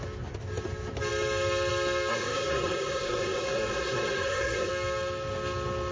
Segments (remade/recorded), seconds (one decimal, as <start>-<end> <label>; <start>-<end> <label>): 0.0-2.1 recorded; 2.1-4.7 remade; 4.7-5.9 recorded